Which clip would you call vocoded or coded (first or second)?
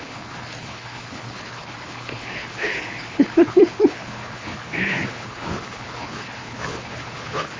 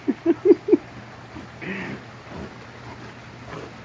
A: first